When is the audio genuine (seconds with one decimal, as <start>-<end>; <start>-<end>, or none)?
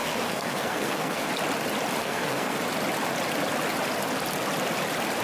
1.3-2.0; 2.6-5.2